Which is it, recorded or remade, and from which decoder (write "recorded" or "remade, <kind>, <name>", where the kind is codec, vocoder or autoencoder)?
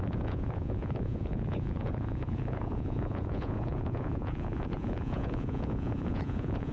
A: remade, vocoder, Vocos